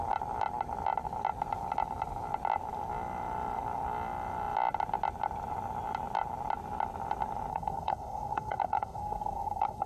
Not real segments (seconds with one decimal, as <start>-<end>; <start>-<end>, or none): 7.5-9.9